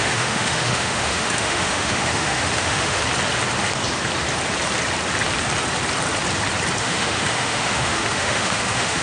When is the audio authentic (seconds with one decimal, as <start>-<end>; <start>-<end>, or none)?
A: 3.0-6.8